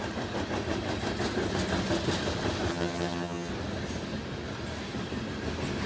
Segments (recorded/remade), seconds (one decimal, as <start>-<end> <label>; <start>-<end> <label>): 0.0-2.7 recorded; 2.7-3.5 remade; 3.5-5.9 recorded